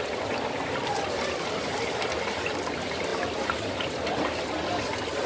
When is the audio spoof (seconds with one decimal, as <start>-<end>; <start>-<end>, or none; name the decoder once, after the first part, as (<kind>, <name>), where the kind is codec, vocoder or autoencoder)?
3.1-3.9 (vocoder, BigVGAN v2)